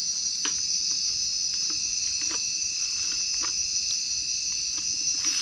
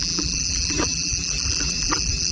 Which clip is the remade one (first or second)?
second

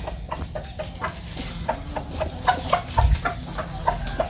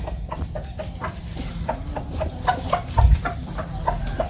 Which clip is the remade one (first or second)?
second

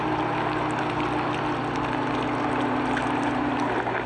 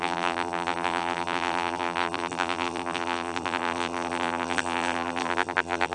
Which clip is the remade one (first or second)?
second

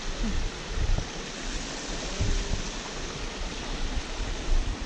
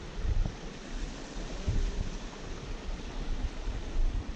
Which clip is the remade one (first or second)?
second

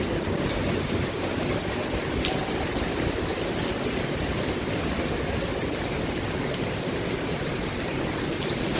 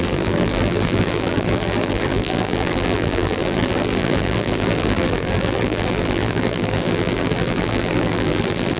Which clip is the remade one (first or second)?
second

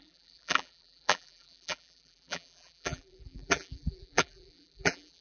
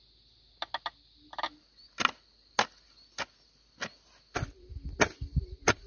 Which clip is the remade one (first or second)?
first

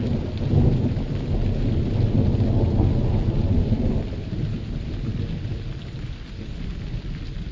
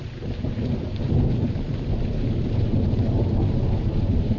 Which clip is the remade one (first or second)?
second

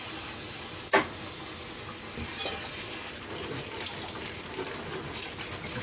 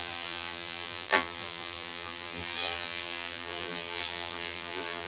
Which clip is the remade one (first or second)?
second